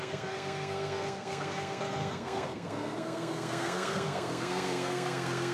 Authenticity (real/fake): fake